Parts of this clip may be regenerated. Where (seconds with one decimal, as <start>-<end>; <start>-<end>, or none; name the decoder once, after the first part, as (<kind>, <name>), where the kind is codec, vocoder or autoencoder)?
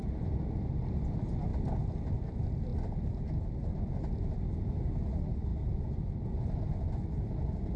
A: none